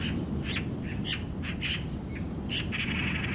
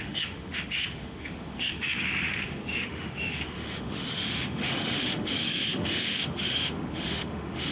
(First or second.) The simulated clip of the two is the second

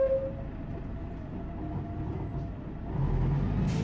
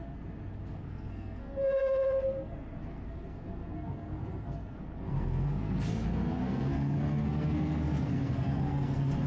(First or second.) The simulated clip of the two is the second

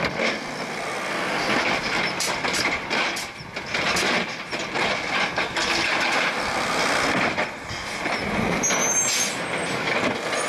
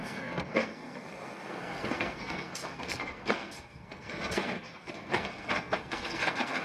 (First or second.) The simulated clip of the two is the second